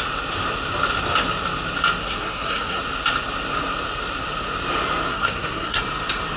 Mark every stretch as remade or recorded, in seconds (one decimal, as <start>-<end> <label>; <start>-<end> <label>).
0.0-2.0 recorded; 2.0-2.8 remade; 2.8-5.1 recorded; 5.1-5.8 remade; 5.8-6.4 recorded